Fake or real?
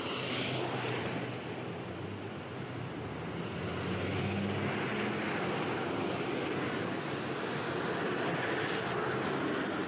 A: real